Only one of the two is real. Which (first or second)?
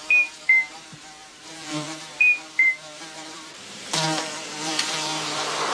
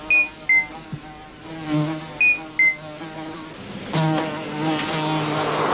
second